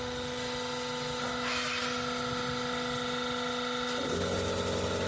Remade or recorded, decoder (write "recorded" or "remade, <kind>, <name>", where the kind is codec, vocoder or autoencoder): recorded